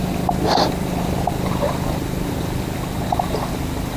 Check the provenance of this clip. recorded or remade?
recorded